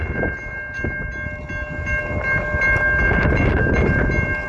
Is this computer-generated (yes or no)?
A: no